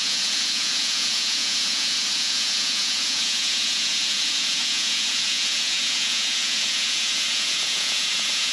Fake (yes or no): yes